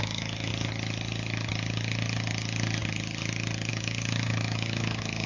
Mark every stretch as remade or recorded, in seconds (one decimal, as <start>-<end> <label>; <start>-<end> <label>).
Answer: 0.0-0.5 remade; 0.5-3.7 recorded; 3.7-5.3 remade